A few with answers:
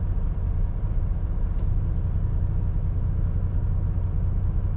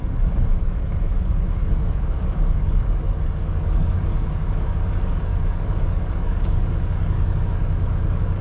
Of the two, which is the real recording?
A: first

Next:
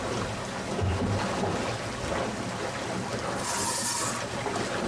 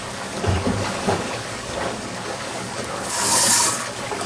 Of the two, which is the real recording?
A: first